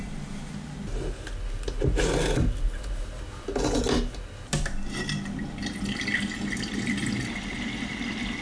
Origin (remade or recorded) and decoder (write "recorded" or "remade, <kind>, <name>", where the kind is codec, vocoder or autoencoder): recorded